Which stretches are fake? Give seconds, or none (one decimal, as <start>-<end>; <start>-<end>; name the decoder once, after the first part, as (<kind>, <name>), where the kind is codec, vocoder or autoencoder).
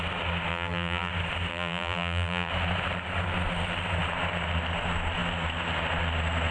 0.5-1.1 (vocoder, BigVGAN v2); 1.5-2.5